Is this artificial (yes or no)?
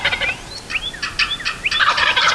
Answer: no